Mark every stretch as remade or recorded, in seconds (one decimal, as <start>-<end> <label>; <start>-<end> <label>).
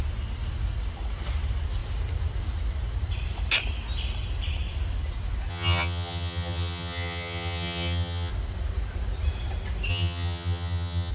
0.0-5.5 recorded; 5.5-8.3 remade; 8.3-9.9 recorded; 9.9-11.1 remade